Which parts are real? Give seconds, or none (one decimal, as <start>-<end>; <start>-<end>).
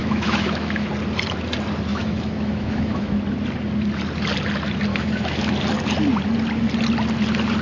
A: 0.9-1.9; 3.2-4.9; 5.5-7.6